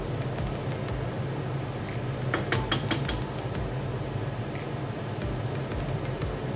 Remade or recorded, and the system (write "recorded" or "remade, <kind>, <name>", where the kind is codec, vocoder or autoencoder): recorded